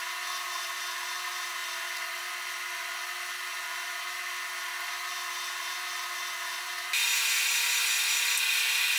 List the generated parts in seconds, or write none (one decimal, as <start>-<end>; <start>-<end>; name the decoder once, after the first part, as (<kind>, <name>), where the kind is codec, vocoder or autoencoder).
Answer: none